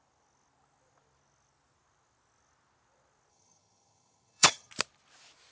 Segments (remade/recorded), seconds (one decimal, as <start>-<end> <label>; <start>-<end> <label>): 0.0-3.3 recorded; 3.3-4.7 remade; 4.7-5.5 recorded